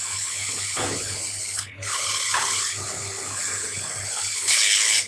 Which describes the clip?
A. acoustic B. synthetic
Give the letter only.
B